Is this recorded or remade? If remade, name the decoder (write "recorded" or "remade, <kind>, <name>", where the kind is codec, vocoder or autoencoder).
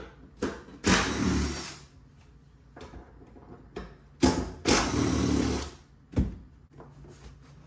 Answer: recorded